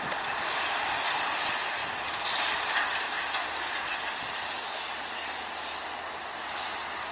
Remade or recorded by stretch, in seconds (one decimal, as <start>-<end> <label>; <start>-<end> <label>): 0.0-7.1 recorded